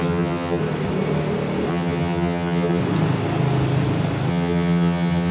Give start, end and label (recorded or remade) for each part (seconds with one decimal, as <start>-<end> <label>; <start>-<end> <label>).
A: 0.0-0.6 remade; 0.6-1.7 recorded; 1.7-2.8 remade; 2.8-4.3 recorded; 4.3-5.3 remade